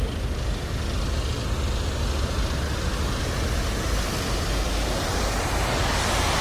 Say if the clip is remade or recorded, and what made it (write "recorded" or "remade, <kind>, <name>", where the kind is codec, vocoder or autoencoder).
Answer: recorded